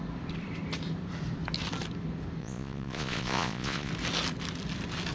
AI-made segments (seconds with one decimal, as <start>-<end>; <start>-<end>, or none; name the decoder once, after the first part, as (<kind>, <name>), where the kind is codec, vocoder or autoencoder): 2.4-3.9 (vocoder, Vocos)